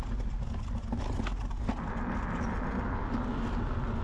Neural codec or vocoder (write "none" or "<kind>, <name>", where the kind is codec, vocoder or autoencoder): none